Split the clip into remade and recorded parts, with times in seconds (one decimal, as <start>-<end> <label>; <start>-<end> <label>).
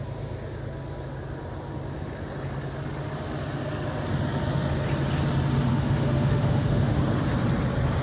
0.0-5.7 recorded; 5.7-7.0 remade; 7.0-8.0 recorded